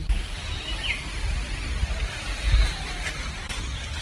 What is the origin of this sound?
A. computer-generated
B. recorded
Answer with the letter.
B